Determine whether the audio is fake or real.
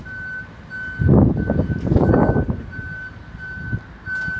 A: real